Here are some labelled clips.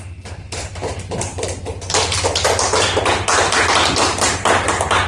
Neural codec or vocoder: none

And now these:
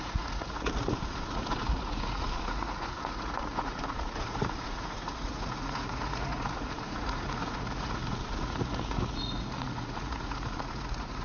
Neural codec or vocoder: vocoder, Vocos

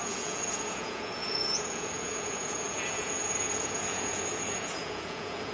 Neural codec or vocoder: vocoder, Vocos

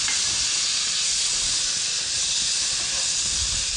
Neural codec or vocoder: none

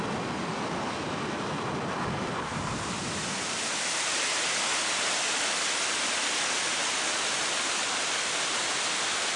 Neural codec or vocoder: none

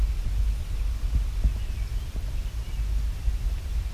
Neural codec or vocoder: none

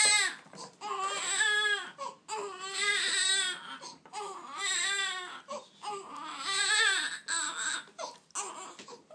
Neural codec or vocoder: none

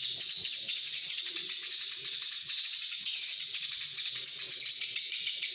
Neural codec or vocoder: vocoder, Vocos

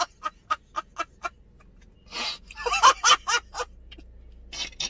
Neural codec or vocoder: none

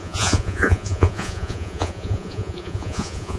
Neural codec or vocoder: vocoder, Vocos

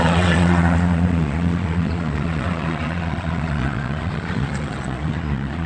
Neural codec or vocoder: vocoder, Vocos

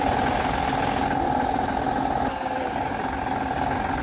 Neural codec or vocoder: none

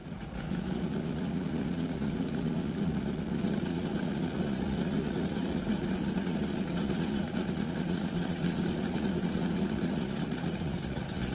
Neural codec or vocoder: vocoder, Vocos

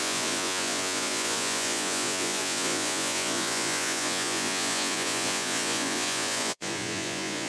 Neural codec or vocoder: vocoder, Vocos